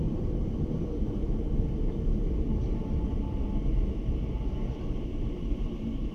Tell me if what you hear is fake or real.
fake